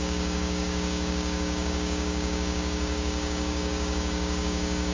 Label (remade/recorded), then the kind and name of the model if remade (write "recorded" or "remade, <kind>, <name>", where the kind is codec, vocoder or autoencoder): remade, codec, DAC